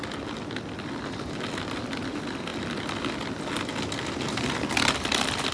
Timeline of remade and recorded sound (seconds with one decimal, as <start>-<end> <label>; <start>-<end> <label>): 0.0-5.5 recorded